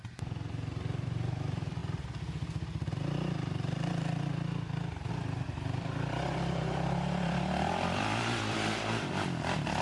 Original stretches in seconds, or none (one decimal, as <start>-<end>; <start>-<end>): 1.8-5.1